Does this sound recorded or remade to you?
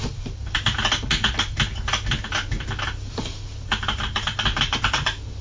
recorded